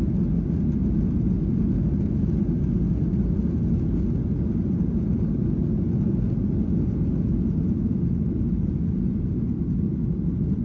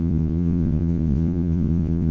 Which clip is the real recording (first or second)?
first